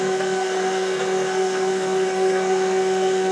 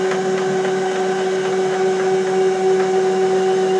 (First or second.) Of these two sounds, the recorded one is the second